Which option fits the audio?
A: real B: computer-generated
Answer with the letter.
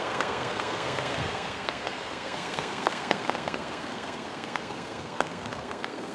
B